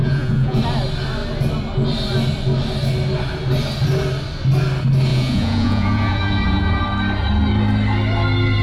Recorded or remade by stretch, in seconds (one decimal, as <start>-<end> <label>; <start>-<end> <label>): 0.0-0.6 remade; 0.6-5.1 recorded; 5.1-6.8 remade; 6.8-8.6 recorded